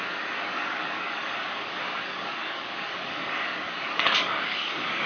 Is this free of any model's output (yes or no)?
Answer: no